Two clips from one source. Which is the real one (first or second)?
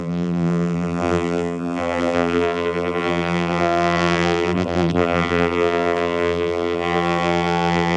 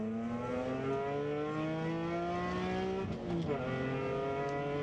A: second